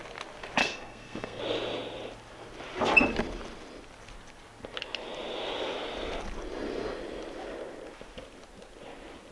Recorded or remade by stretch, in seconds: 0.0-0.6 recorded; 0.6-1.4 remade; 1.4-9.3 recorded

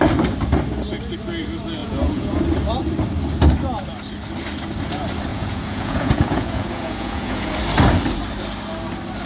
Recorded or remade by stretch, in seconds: 0.0-1.8 recorded; 1.8-2.4 remade; 2.4-5.3 recorded; 5.3-7.5 remade; 7.5-9.3 recorded

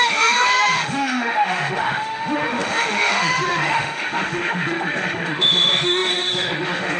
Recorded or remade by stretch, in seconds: 0.0-7.0 remade

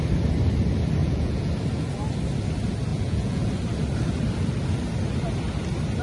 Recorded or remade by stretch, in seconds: 0.0-1.0 recorded; 1.0-1.5 remade; 1.5-2.9 recorded; 2.9-3.5 remade; 3.5-6.0 recorded

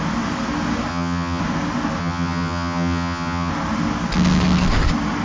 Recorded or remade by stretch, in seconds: 0.0-0.9 recorded; 0.9-1.4 remade; 1.4-2.0 recorded; 2.0-3.5 remade; 3.5-5.2 recorded

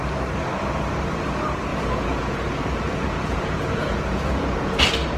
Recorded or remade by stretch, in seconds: 0.0-1.7 recorded; 1.7-4.8 remade; 4.8-5.2 recorded

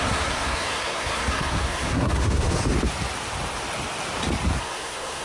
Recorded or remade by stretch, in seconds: 0.0-2.6 remade; 2.6-4.6 recorded; 4.6-5.2 remade